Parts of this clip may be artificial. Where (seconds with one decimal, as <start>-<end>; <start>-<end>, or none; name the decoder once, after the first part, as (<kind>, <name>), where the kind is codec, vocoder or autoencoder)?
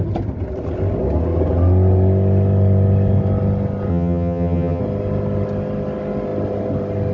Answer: 3.9-4.8 (vocoder, HiFi-GAN)